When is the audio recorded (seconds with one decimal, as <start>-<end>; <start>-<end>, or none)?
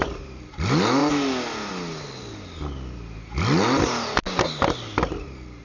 0.0-5.6